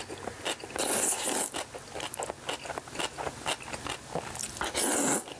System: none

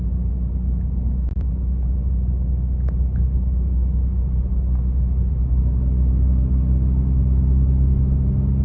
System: none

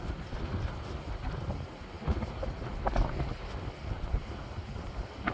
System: none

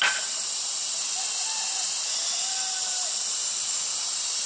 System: none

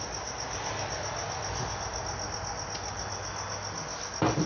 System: none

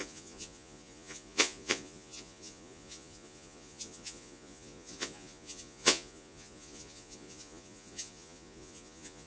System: vocoder, Vocos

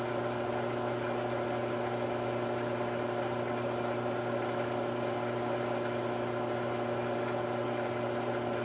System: none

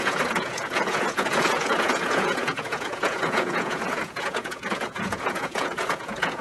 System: vocoder, Vocos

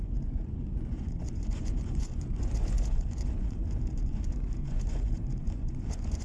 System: vocoder, Vocos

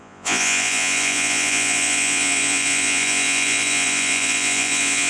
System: vocoder, Vocos